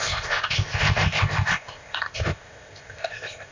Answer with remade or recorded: remade